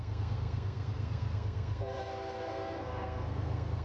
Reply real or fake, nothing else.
fake